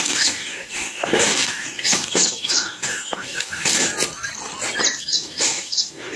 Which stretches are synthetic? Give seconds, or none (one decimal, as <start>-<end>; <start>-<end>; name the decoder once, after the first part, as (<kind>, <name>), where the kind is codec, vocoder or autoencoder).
0.0-3.9 (codec, DAC); 5.0-6.2